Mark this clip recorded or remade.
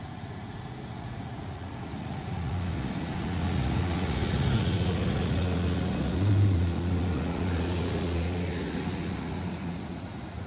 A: remade